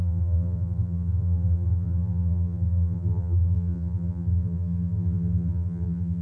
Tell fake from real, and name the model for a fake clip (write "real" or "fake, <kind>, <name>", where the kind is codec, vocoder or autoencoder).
fake, vocoder, BigVGAN v2